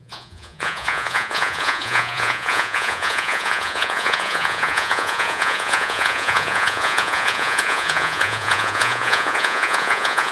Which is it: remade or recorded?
remade